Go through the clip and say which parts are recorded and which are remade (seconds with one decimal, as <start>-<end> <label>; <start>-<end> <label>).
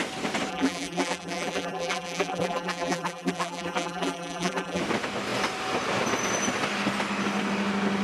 0.0-0.5 recorded; 0.5-4.8 remade; 4.8-8.0 recorded